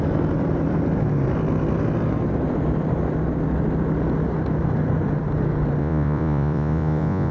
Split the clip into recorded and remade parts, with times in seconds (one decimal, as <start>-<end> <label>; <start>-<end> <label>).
0.0-5.8 recorded; 5.8-7.3 remade